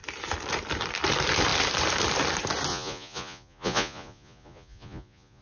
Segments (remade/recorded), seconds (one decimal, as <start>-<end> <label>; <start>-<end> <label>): 0.0-2.7 recorded; 2.7-5.4 remade